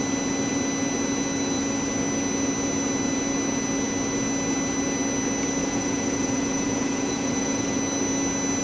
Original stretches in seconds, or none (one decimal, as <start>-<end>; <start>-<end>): 0.0-5.6; 7.8-8.6